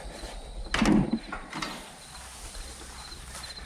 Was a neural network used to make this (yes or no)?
no